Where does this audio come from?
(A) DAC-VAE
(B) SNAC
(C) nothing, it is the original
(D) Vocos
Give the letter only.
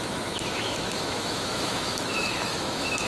A